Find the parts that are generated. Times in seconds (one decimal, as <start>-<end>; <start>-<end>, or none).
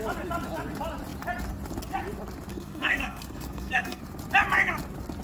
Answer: 2.5-4.0